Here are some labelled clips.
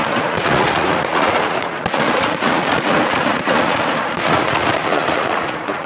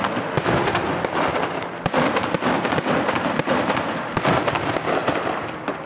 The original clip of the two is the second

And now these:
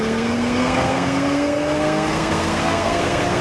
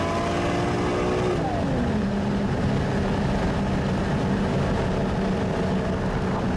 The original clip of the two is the second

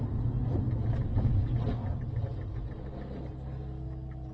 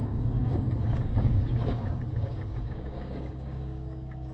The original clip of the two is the first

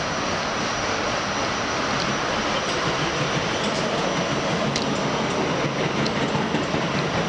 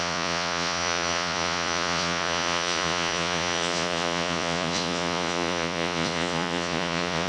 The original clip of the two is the first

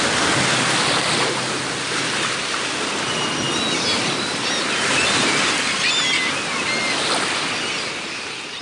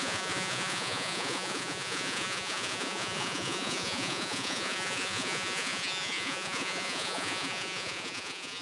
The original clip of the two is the first